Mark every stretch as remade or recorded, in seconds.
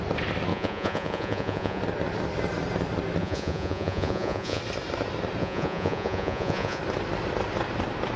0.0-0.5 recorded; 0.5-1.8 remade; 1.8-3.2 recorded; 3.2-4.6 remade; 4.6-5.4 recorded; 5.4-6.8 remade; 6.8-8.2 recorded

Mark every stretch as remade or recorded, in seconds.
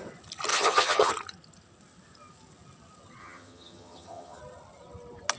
0.0-0.5 recorded; 0.5-1.1 remade; 1.1-3.2 recorded; 3.2-4.4 remade; 4.4-5.4 recorded